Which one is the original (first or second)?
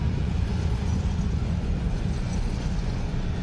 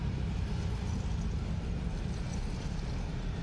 second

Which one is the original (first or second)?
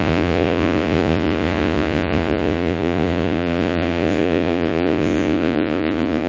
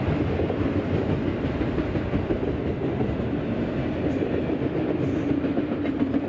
second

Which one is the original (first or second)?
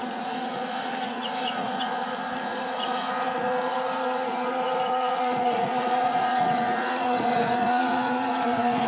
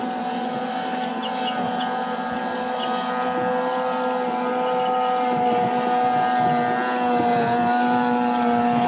second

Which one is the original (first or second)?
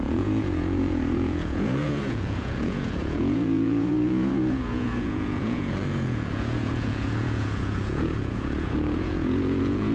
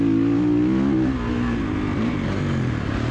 second